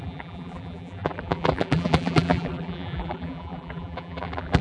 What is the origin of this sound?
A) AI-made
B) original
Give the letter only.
A